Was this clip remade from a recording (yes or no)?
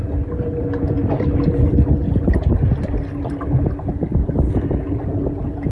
no